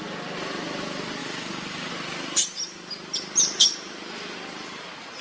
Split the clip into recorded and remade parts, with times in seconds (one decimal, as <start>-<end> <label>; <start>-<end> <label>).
0.0-1.2 recorded; 1.2-1.9 remade; 1.9-5.2 recorded